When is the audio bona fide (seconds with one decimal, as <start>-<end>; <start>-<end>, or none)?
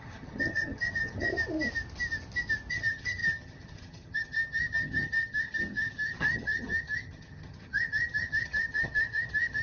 1.3-2.7